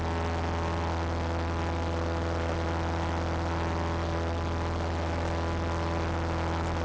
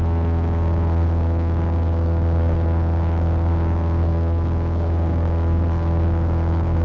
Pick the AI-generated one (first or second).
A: second